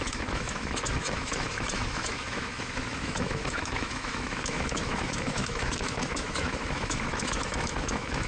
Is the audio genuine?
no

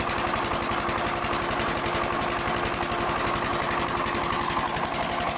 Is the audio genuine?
yes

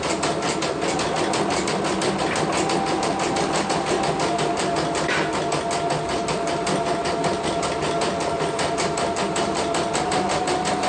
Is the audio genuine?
yes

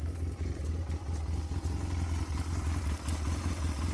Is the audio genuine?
yes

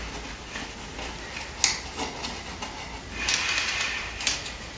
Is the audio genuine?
yes